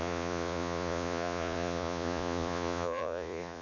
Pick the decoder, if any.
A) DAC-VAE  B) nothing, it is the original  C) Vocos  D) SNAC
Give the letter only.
C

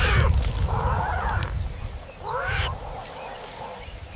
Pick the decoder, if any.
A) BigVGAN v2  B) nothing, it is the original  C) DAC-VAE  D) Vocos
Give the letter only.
A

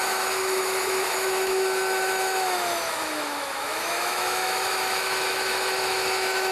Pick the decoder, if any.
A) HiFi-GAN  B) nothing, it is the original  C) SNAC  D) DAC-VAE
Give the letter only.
D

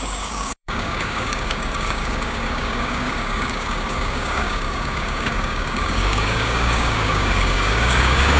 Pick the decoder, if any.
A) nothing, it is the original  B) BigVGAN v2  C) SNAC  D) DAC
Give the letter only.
D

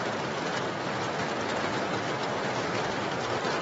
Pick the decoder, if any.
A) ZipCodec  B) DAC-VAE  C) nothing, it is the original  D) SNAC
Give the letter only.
C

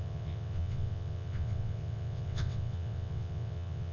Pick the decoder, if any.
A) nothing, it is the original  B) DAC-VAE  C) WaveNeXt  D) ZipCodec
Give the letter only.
C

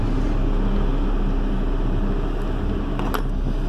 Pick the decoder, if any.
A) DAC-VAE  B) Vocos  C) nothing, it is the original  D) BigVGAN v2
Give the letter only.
C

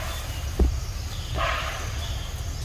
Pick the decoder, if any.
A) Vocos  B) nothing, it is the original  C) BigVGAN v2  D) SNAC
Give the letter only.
B